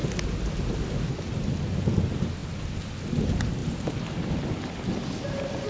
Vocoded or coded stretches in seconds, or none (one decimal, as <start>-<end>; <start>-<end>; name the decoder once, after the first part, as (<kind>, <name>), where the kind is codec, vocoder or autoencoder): none